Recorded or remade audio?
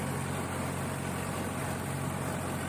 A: recorded